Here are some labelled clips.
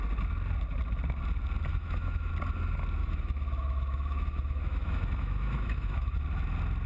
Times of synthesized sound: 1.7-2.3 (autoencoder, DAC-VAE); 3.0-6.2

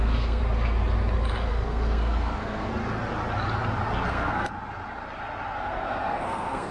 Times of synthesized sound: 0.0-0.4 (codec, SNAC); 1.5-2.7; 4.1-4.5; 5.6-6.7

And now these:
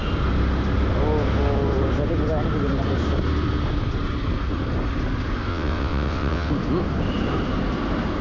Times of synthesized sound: 5.5-6.5 (vocoder, WaveNeXt)

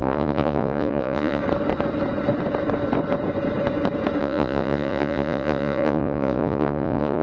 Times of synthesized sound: 0.0-1.4 (vocoder, Vocos); 4.2-7.2